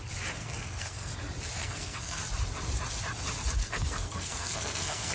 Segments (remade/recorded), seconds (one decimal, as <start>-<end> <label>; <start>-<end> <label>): 0.0-0.4 recorded; 0.4-1.1 remade; 1.1-1.6 recorded; 1.6-2.2 remade; 2.2-3.6 recorded; 3.6-5.1 remade